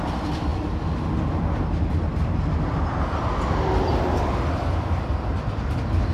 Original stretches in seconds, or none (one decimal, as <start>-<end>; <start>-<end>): 0.0-6.1

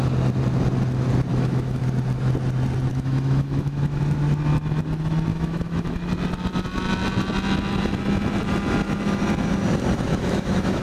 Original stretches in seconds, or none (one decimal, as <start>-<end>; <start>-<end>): 0.0-1.3; 1.8-2.9; 4.0-5.3; 6.1-10.1

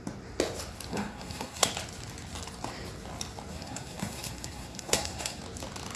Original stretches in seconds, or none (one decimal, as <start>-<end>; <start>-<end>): 0.0-0.9; 1.7-3.5; 5.4-6.0

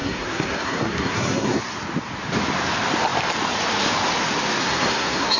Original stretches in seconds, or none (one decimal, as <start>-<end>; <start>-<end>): 1.6-4.6

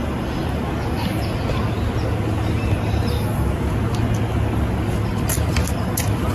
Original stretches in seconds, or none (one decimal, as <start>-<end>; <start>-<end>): 0.0-6.3